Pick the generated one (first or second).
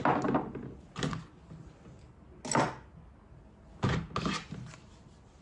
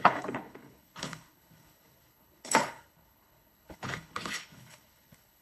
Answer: second